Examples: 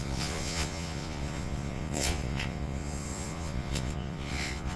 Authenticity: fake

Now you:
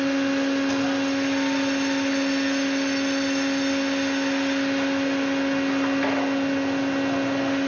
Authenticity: real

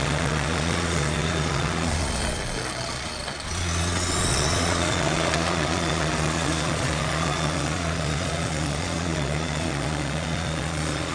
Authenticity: fake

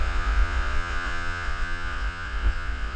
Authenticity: fake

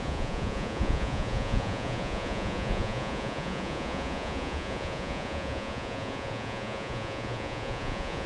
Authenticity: fake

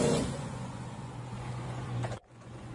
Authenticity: fake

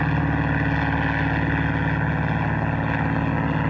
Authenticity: real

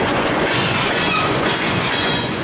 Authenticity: fake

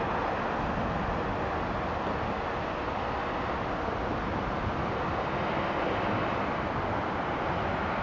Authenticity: real